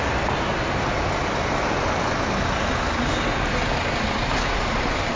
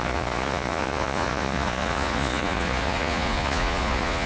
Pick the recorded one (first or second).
first